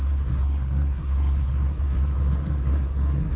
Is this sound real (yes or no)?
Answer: no